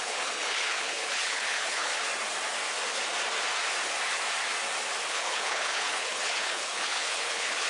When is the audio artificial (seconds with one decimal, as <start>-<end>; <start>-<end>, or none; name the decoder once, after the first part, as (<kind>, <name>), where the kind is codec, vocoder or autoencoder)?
0.0-1.9 (codec, HILCodec); 5.1-7.7